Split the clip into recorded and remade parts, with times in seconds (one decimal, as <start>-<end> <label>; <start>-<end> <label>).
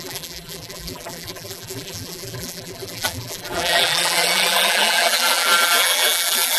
0.0-6.6 remade